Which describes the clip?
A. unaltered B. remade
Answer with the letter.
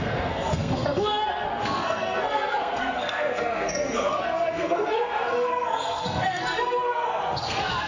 B